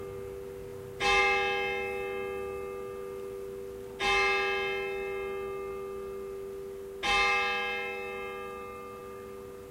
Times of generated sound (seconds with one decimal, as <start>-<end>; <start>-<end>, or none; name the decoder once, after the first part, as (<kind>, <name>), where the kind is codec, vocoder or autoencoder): none